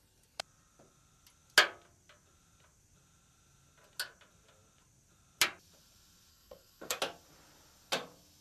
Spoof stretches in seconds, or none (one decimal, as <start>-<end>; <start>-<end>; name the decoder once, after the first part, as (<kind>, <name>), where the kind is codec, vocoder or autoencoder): 6.3-7.0 (codec, SNAC)